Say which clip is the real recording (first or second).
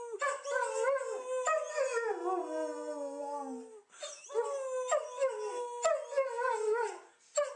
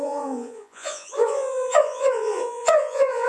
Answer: first